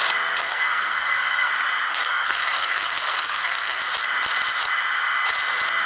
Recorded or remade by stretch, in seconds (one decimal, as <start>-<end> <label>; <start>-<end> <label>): 0.0-0.4 recorded; 0.4-1.5 remade; 1.5-1.9 recorded; 1.9-3.8 remade; 3.8-5.9 recorded